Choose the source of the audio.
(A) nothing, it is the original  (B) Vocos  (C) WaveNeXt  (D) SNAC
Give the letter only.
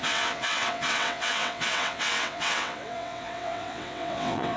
C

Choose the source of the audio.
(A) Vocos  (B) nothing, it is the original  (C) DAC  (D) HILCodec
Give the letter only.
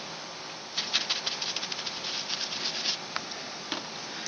B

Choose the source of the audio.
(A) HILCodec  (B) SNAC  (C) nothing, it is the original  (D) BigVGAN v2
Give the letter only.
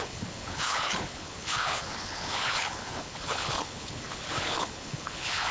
A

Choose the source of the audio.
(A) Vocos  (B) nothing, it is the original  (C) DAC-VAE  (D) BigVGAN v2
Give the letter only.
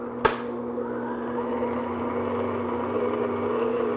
B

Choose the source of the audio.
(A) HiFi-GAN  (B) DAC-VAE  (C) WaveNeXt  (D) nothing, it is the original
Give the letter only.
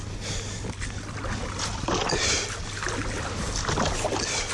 D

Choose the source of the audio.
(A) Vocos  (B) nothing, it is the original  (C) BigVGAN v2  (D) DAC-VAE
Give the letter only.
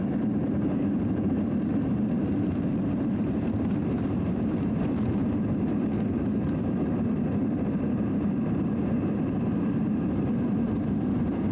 C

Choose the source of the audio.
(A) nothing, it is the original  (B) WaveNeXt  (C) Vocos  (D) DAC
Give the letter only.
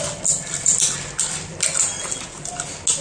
A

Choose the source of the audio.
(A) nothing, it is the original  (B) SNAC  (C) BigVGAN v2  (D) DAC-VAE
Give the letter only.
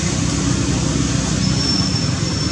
A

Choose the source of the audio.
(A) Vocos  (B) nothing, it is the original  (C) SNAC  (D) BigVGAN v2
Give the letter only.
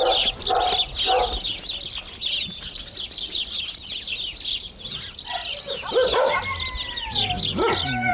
B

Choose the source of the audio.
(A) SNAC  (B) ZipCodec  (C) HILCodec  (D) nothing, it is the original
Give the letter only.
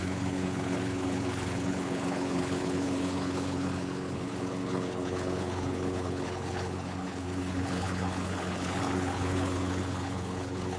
C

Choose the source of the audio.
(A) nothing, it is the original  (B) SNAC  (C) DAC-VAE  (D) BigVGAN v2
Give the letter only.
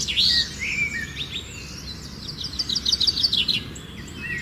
A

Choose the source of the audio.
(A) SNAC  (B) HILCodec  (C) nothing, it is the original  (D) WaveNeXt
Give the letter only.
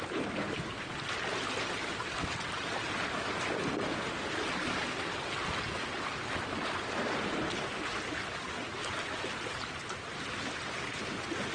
C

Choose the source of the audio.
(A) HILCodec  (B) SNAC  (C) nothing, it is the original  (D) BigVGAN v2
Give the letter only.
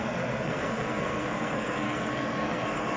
B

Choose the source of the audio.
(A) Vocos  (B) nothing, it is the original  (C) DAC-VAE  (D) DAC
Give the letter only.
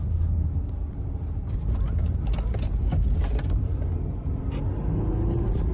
B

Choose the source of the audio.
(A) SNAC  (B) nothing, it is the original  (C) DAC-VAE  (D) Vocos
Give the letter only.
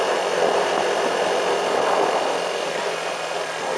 B